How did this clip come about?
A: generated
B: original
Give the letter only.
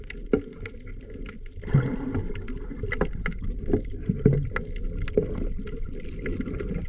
B